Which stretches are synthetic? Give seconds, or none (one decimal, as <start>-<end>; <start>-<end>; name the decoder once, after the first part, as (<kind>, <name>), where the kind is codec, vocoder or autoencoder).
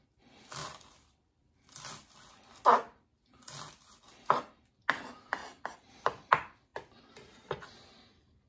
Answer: 5.4-6.3 (vocoder, BigVGAN v2)